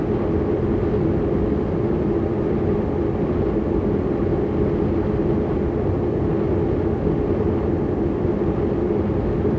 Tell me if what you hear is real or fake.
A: real